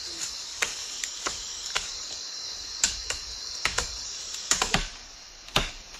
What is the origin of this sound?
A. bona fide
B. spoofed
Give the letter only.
B